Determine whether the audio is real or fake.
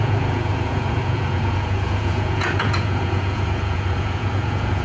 fake